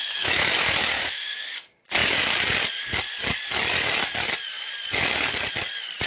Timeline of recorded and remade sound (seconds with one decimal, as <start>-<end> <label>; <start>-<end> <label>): 0.0-1.5 remade; 1.5-6.1 recorded